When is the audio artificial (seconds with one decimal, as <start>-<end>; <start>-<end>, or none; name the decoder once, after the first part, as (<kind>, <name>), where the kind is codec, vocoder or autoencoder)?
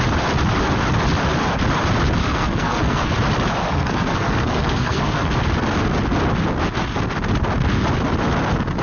2.2-3.1 (codec, SNAC); 3.6-5.3